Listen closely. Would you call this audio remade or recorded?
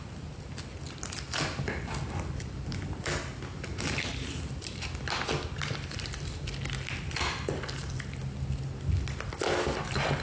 recorded